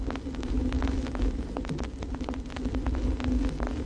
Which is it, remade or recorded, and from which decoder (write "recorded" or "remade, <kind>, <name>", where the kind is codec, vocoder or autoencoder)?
recorded